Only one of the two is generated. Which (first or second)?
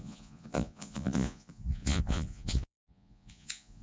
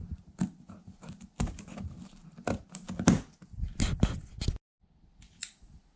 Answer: first